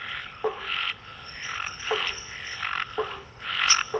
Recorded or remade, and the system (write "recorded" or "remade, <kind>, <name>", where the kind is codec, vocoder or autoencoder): remade, codec, HILCodec